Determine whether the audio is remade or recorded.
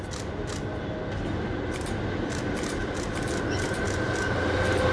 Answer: recorded